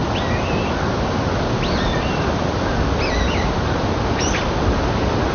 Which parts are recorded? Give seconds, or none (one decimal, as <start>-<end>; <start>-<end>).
0.0-5.3

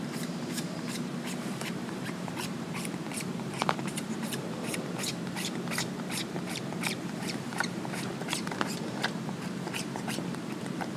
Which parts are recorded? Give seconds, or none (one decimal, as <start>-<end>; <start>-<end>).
none